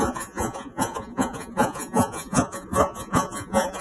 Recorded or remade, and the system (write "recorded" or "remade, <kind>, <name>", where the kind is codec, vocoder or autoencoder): remade, vocoder, Vocos